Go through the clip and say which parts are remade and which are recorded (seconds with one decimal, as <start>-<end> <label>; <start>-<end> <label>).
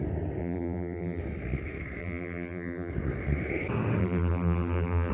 0.0-0.4 recorded; 0.4-1.2 remade; 1.2-2.0 recorded; 2.0-2.9 remade; 2.9-4.0 recorded; 4.0-5.1 remade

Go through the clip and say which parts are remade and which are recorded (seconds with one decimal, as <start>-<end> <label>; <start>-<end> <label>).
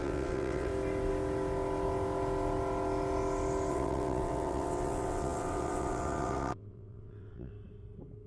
0.0-0.7 remade; 0.7-3.7 recorded; 3.7-7.5 remade; 7.5-8.3 recorded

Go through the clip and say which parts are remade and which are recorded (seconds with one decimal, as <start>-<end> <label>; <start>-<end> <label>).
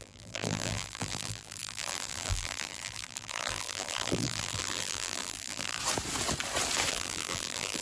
0.0-5.8 remade; 5.8-6.9 recorded; 6.9-7.8 remade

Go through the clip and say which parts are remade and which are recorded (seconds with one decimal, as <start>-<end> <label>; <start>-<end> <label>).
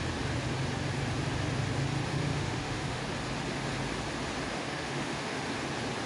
0.0-2.1 recorded; 2.1-3.0 remade; 3.0-4.5 recorded; 4.5-5.4 remade; 5.4-6.1 recorded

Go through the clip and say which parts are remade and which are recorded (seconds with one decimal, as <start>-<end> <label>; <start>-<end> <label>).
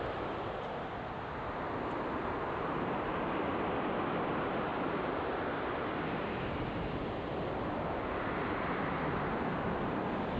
0.0-10.4 recorded